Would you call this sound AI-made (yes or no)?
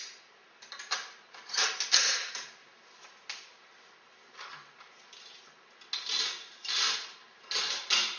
no